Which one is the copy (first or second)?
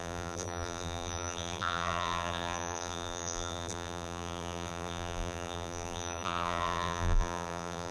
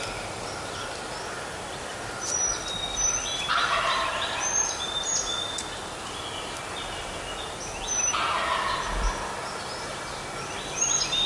first